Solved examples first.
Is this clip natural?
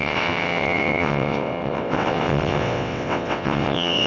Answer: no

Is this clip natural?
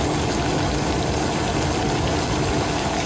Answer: yes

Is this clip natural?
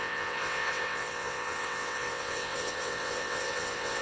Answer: no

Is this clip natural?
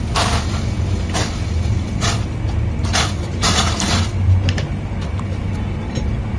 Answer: yes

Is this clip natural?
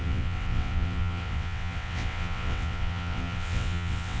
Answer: no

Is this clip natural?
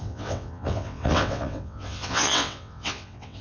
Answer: no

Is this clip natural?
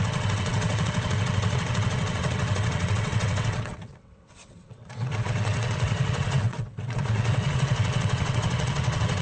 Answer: no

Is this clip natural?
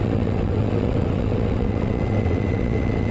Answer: no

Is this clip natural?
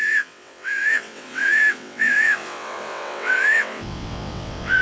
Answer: no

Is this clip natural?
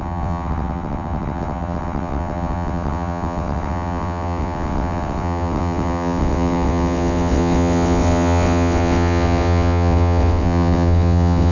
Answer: no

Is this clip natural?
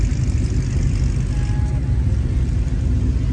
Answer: yes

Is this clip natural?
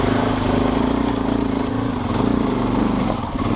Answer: yes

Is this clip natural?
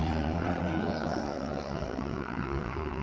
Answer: no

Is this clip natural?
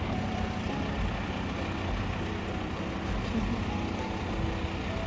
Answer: yes